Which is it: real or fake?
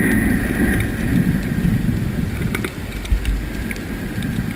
real